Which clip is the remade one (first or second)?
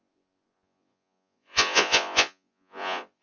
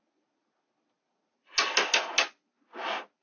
first